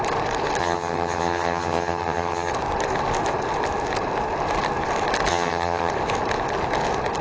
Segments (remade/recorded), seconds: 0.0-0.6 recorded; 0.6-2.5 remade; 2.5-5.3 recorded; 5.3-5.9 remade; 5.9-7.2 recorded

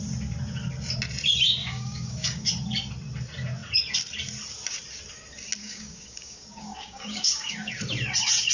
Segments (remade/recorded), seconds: 0.0-1.6 recorded; 1.6-2.5 remade; 2.5-5.6 recorded; 5.6-7.7 remade; 7.7-8.5 recorded

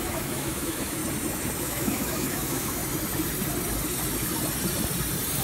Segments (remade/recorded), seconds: 0.0-1.0 remade; 1.0-1.6 recorded; 1.6-2.8 remade; 2.8-5.4 recorded

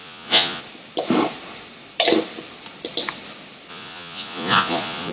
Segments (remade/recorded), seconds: 0.0-0.6 remade; 0.6-3.7 recorded; 3.7-5.1 remade

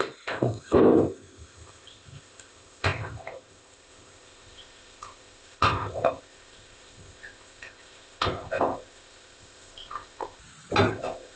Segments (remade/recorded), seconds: 0.0-10.4 remade; 10.4-10.9 recorded; 10.9-11.4 remade